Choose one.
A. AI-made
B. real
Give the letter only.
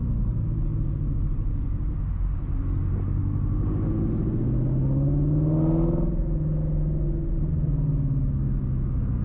B